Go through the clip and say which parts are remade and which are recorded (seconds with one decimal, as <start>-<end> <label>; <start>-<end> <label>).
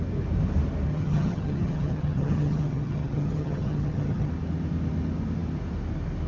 0.0-0.9 recorded; 0.9-4.3 remade; 4.3-6.3 recorded